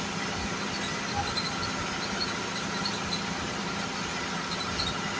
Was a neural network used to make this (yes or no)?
no